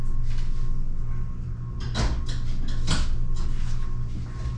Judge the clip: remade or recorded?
recorded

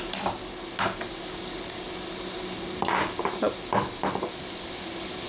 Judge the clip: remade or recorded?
recorded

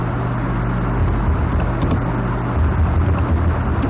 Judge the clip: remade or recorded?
recorded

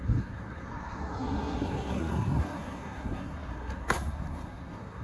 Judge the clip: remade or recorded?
remade